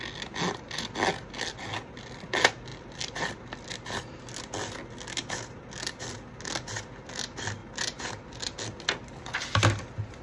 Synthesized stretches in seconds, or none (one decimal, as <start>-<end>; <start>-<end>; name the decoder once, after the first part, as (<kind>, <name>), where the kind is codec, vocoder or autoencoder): 2.7-4.0 (vocoder, BigVGAN v2)